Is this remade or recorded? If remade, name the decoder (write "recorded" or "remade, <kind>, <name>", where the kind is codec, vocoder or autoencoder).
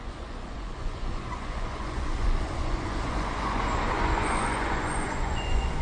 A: remade, vocoder, Vocos